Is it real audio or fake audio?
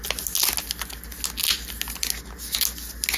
real